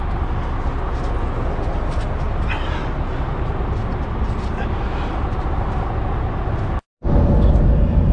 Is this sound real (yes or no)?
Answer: yes